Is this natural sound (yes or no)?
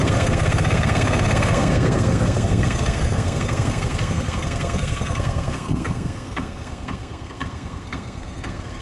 no